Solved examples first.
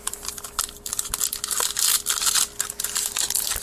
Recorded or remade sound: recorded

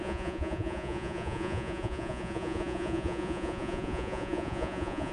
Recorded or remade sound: remade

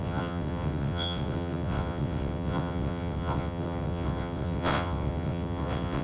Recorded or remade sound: remade